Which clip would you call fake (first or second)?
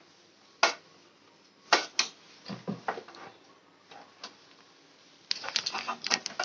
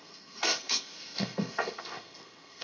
second